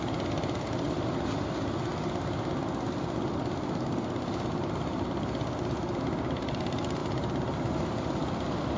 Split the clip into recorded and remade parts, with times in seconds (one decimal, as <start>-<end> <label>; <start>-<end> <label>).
0.0-8.8 recorded